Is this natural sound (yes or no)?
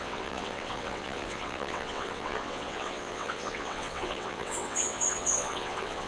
no